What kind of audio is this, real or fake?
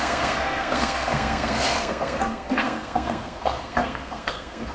fake